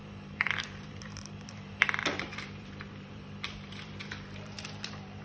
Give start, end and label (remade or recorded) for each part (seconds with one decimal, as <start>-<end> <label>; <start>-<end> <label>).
0.0-5.2 remade